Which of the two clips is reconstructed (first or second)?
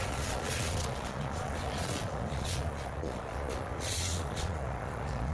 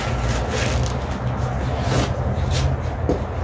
first